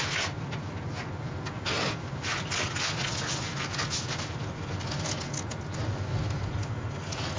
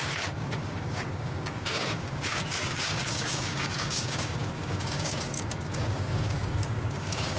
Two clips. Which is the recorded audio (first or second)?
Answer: first